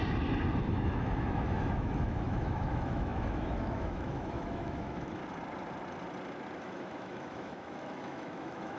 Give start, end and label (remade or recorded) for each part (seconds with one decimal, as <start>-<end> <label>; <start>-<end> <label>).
0.0-0.6 recorded; 0.6-5.2 remade; 5.2-6.6 recorded; 6.6-8.8 remade